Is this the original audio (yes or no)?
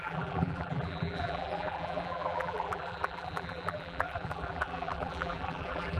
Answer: no